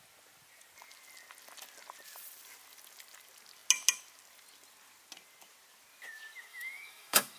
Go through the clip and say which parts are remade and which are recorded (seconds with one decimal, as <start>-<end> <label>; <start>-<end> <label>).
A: 0.0-6.5 recorded; 6.5-7.4 remade